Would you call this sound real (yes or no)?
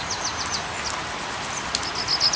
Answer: yes